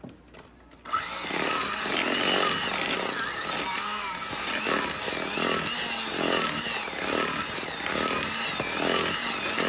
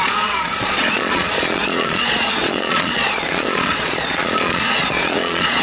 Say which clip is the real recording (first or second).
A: first